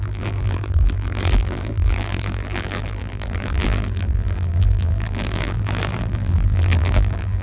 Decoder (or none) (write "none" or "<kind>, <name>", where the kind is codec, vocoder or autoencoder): vocoder, BigVGAN v2